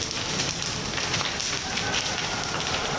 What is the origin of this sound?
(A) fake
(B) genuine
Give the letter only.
B